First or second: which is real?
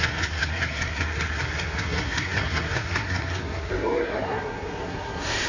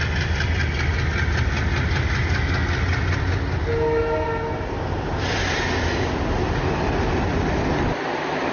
second